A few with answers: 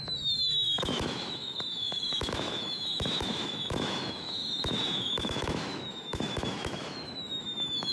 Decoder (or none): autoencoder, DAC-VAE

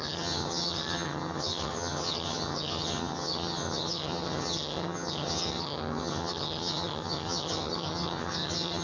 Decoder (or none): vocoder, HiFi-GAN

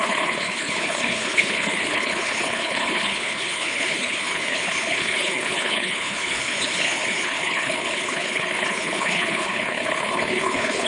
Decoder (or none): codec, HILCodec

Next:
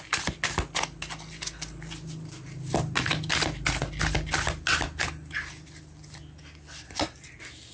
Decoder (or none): none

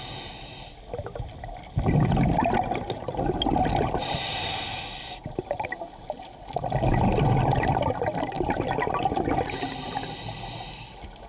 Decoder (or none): none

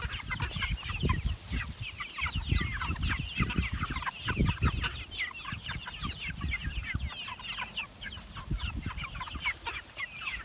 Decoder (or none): none